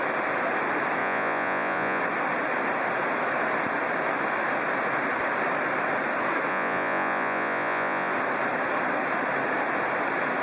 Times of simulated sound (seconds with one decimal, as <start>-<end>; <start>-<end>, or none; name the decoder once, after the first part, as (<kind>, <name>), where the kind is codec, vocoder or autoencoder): 1.0-2.0 (vocoder, Vocos); 6.5-8.1